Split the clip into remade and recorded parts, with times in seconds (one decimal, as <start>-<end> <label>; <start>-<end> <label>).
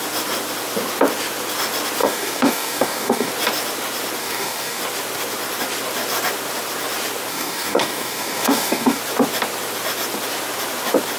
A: 0.0-2.0 recorded; 2.0-3.3 remade; 3.3-4.2 recorded; 4.2-4.8 remade; 4.8-7.3 recorded; 7.3-9.0 remade; 9.0-11.2 recorded